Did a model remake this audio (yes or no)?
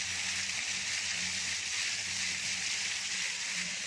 no